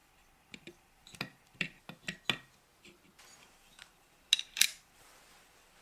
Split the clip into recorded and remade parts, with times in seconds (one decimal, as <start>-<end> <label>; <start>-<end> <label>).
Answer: 0.0-1.8 remade; 1.8-2.7 recorded; 2.7-5.3 remade; 5.3-5.8 recorded